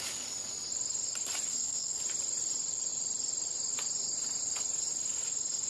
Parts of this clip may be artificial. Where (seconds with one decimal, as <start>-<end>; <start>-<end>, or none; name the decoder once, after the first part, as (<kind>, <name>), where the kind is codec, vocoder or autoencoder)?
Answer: 1.5-2.0 (codec, SNAC)